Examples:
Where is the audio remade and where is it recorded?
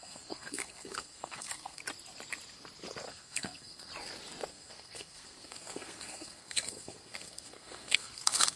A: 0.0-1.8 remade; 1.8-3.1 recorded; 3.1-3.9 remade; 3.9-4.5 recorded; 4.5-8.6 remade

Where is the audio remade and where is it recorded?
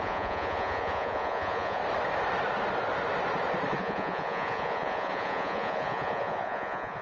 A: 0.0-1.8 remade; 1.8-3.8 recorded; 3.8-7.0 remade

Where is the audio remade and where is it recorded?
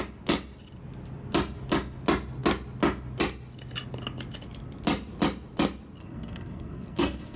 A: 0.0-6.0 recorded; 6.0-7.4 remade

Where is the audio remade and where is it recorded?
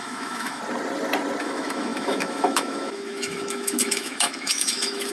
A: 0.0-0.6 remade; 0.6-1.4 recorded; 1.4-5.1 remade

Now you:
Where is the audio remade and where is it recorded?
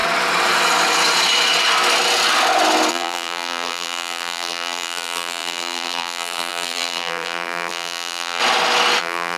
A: 0.0-2.9 recorded; 2.9-8.4 remade; 8.4-9.0 recorded; 9.0-9.4 remade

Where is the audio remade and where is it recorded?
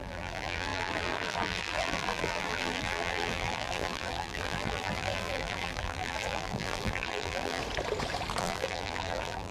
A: 0.0-7.6 remade; 7.6-8.4 recorded; 8.4-9.5 remade